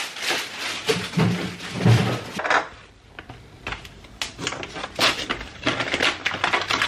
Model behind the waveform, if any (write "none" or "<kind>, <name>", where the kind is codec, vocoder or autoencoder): none